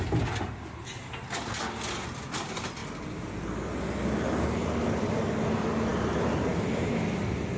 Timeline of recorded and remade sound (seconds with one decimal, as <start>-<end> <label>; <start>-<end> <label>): 0.0-7.6 recorded